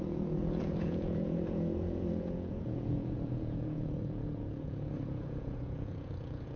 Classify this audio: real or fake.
fake